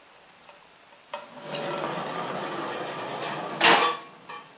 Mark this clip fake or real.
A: real